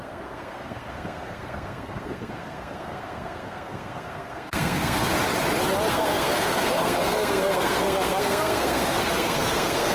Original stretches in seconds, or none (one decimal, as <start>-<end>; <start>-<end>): 5.1-5.9